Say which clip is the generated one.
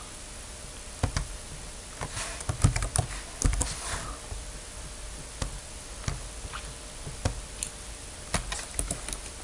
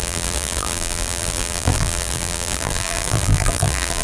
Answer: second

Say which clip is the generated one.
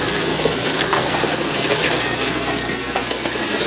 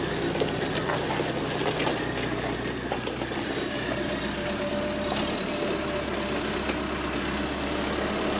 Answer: first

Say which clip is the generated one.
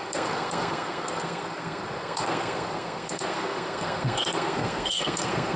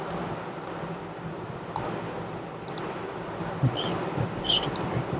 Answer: first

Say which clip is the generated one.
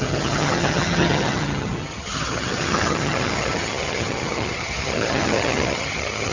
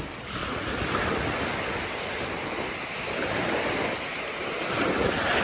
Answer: first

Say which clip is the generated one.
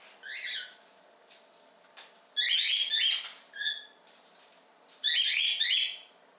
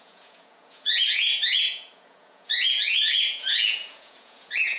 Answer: second